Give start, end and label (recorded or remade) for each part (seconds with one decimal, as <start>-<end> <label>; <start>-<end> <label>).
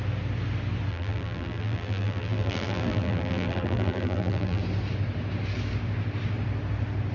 0.0-0.9 recorded; 0.9-4.6 remade; 4.6-7.1 recorded